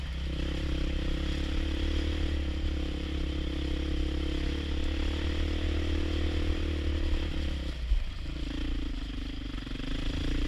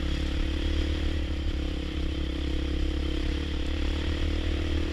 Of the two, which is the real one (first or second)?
first